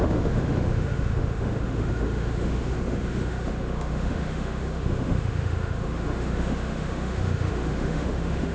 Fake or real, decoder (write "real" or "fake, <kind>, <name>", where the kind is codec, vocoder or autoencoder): fake, autoencoder, DAC-VAE